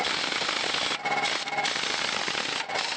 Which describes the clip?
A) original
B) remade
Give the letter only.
A